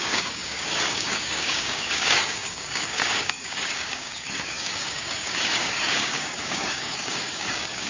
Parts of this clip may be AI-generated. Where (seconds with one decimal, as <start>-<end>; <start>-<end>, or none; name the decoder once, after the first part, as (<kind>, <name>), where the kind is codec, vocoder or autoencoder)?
0.0-7.9 (codec, DAC)